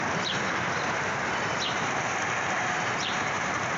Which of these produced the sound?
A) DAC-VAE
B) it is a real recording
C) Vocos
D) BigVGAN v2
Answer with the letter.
D